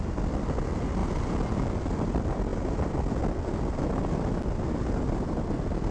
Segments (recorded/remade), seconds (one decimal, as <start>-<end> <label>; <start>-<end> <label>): 0.0-5.9 recorded